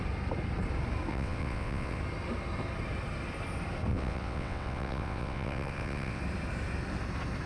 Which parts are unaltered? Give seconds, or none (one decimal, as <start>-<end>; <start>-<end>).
0.0-1.1; 2.0-3.9; 6.2-7.5